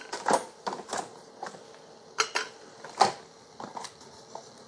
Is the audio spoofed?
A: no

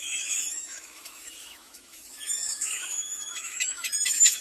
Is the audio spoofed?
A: yes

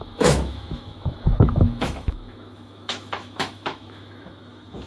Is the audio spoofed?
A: yes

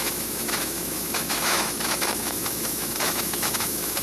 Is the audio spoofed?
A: yes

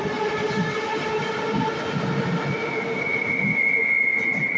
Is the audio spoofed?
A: no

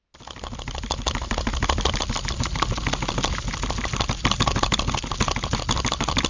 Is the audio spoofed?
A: no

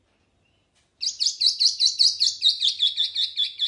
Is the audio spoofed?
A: no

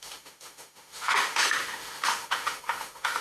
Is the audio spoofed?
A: yes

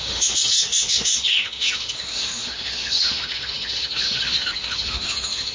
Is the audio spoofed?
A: yes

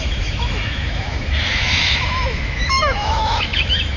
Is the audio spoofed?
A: yes